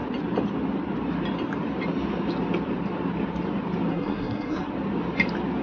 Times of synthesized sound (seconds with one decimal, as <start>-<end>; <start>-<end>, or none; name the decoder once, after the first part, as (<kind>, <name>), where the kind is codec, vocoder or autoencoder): 3.9-4.7 (codec, SNAC)